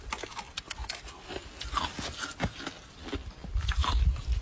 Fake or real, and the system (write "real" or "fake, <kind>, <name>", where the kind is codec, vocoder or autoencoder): real